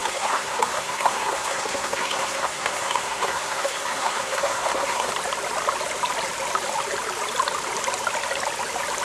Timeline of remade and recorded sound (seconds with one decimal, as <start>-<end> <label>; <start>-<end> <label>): 0.0-5.1 remade; 5.1-9.0 recorded